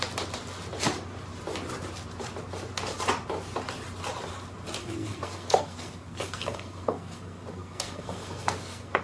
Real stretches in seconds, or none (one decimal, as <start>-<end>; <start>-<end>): 0.0-4.8